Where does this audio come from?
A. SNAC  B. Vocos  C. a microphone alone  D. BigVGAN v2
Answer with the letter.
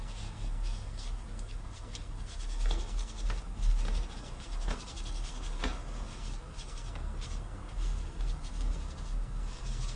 A